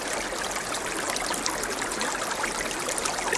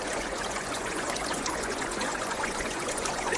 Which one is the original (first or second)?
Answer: first